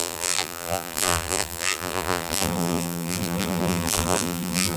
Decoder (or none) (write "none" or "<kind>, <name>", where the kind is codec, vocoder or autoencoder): vocoder, BigVGAN v2